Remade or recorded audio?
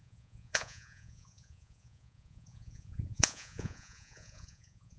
remade